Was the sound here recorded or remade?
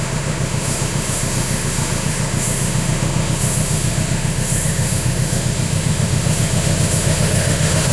remade